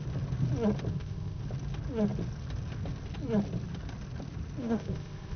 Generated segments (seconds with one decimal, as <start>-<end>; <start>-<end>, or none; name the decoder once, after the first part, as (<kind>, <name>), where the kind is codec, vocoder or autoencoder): 0.9-1.4 (codec, ZipCodec); 4.6-5.4

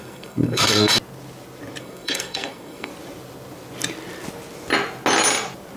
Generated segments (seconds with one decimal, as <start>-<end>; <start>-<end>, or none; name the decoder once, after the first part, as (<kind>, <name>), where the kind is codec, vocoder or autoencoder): 0.0-0.9 (codec, SNAC); 1.8-2.9

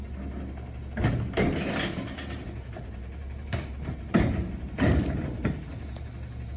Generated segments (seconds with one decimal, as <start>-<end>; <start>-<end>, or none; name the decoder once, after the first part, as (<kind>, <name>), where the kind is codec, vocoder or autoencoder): 3.2-5.6 (vocoder, BigVGAN v2)

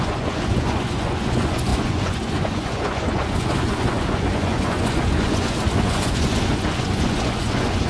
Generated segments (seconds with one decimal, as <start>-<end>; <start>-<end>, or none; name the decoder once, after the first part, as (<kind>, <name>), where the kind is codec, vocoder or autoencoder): 0.0-7.9 (vocoder, Vocos)

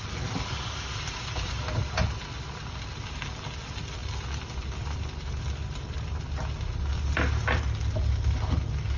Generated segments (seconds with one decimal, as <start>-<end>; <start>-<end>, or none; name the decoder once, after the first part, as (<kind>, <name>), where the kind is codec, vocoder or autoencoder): none

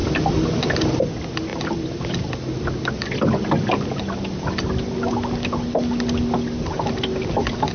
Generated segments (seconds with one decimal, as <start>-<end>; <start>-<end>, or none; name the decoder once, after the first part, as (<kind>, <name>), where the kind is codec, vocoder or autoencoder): none

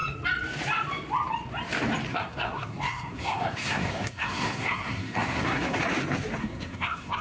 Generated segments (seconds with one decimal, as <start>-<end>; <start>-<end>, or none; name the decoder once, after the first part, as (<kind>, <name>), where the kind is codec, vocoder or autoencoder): 2.1-5.8 (codec, SNAC); 6.4-7.2

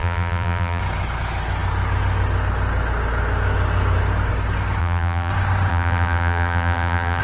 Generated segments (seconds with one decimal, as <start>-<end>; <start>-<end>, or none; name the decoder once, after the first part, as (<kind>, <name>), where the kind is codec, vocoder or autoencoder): 0.0-0.8 (vocoder, BigVGAN v2); 4.8-5.3; 5.7-7.2